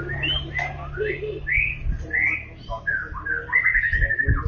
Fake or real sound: real